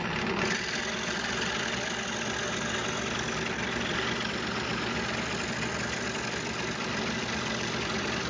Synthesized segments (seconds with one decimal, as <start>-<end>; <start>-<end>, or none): 0.0-2.8; 6.9-8.3